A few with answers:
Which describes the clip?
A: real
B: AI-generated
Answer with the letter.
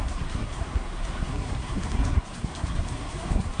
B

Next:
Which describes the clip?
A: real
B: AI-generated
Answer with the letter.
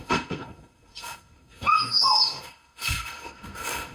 B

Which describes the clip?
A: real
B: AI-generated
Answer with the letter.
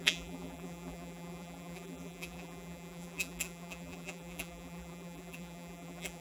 B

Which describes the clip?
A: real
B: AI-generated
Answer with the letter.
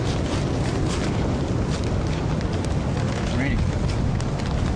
A